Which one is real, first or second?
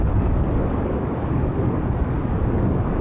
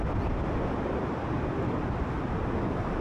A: second